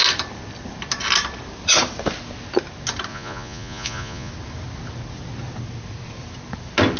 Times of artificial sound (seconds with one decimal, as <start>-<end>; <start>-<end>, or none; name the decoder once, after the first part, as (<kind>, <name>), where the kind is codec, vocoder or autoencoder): 3.1-4.3 (vocoder, Vocos)